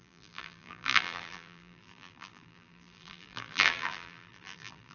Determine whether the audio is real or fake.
fake